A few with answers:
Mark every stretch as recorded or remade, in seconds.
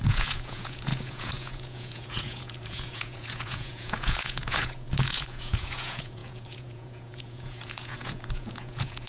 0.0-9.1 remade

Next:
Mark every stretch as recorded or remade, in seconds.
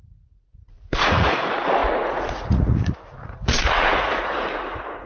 0.0-5.1 remade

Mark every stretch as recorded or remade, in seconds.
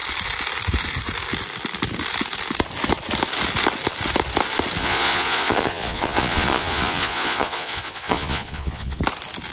0.0-4.8 recorded; 4.8-9.0 remade; 9.0-9.5 recorded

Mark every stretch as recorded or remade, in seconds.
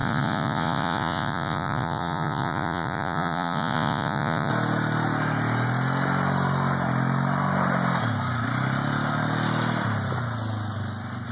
0.0-4.5 remade; 4.5-11.3 recorded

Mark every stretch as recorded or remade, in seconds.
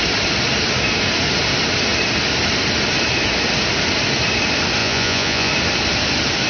0.0-4.8 recorded; 4.8-5.5 remade; 5.5-6.5 recorded